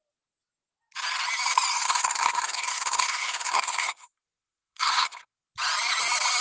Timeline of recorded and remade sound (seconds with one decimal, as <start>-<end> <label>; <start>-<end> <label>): 0.0-1.7 recorded; 1.7-5.5 remade; 5.5-6.4 recorded